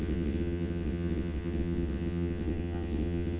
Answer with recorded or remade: remade